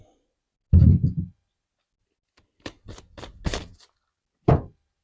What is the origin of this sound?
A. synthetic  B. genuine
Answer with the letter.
B